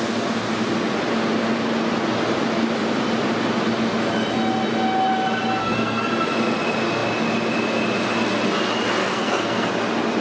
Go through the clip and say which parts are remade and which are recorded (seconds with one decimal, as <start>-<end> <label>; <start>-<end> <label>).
0.0-5.6 recorded; 5.6-6.1 remade; 6.1-9.0 recorded; 9.0-9.7 remade; 9.7-10.2 recorded